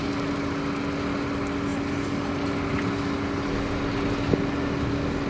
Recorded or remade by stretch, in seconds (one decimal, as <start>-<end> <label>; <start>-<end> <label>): 0.0-5.3 recorded